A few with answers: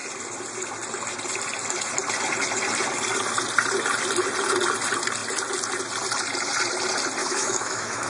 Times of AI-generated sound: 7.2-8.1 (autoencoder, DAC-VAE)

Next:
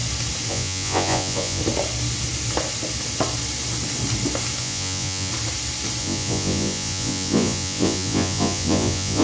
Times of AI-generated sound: 0.5-1.6 (vocoder, Vocos); 4.6-5.3; 6.0-9.2

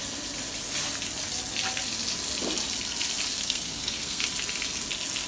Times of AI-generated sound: 3.3-4.2 (codec, SNAC)

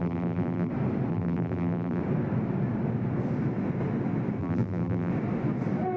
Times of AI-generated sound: 0.0-0.7 (vocoder, BigVGAN v2); 1.1-2.0; 4.4-5.1

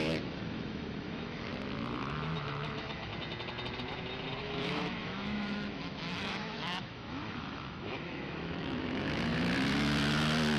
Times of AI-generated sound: 0.0-1.5 (autoencoder, DAC-VAE); 2.0-3.1; 4.4-9.3

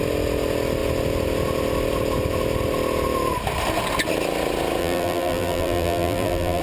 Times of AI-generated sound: 4.8-6.6 (vocoder, BigVGAN v2)